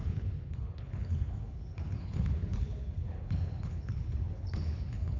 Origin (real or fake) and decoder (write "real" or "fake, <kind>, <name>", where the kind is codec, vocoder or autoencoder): fake, codec, HILCodec